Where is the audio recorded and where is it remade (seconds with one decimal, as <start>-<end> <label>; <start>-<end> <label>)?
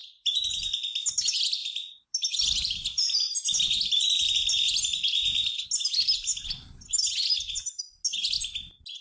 0.0-0.8 remade; 0.8-1.6 recorded; 1.6-4.3 remade; 4.3-9.0 recorded